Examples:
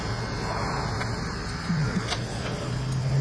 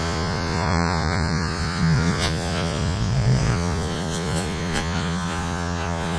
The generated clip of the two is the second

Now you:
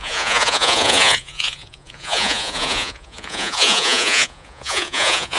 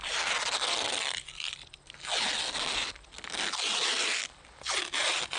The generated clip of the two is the first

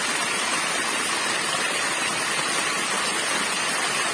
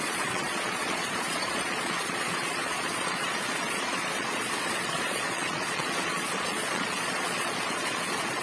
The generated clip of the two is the second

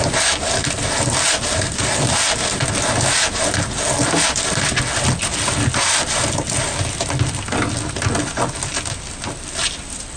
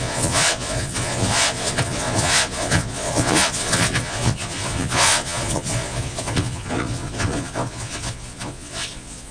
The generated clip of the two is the second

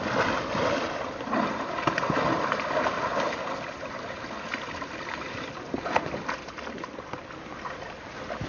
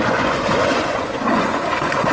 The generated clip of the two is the second